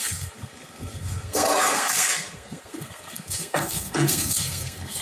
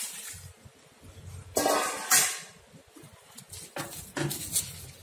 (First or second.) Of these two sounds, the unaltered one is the second